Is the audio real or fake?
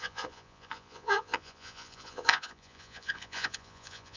fake